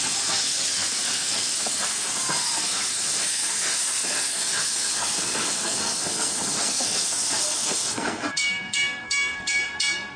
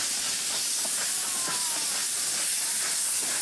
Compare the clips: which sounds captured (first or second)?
second